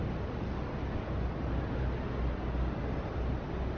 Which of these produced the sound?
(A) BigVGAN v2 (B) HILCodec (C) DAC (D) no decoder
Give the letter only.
D